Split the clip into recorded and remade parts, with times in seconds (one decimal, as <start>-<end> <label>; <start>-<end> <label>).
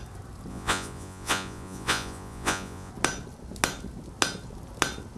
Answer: 0.0-0.5 recorded; 0.5-2.9 remade; 2.9-5.2 recorded